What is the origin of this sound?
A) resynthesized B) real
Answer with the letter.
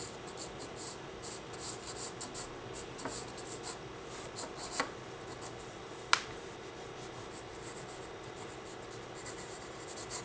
B